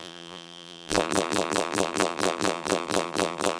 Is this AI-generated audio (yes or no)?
yes